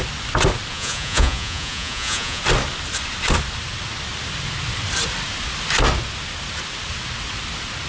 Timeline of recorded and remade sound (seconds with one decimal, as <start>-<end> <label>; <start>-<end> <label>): 0.0-0.7 recorded; 0.7-2.4 remade; 2.4-7.9 recorded